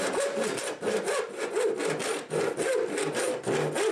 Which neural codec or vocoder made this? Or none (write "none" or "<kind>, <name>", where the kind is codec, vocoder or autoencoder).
none